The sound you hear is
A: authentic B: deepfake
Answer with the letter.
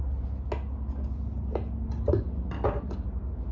A